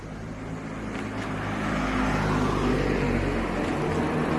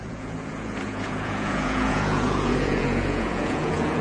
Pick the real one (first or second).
first